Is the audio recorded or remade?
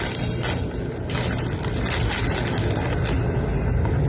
recorded